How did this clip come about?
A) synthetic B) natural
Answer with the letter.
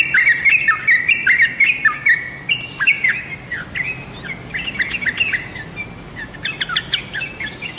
B